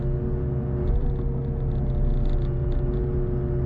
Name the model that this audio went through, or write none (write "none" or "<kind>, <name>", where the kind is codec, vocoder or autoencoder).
none